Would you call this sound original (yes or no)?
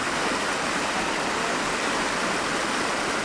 yes